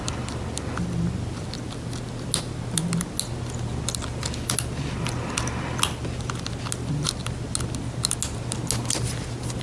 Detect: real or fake real